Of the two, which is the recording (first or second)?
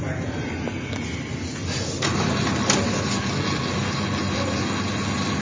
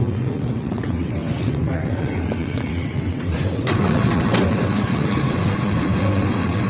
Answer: first